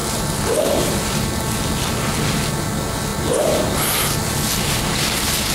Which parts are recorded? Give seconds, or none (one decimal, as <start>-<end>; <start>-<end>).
1.6-5.5